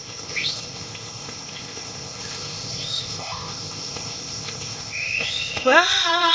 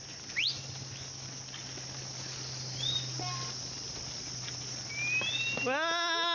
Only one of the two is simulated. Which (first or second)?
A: first